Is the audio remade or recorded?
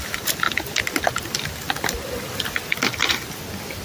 recorded